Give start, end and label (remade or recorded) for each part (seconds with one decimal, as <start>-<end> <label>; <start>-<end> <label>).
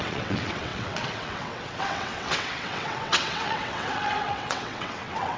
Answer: 0.0-5.4 remade